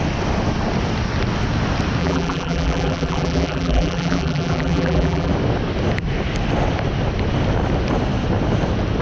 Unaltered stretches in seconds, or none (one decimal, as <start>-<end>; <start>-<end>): 0.0-2.0; 5.3-9.0